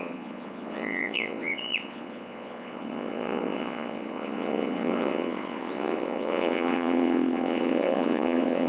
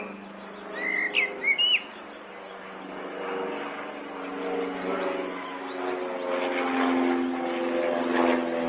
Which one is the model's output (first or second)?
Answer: first